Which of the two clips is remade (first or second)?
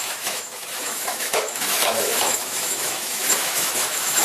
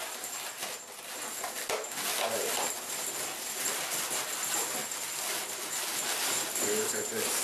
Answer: first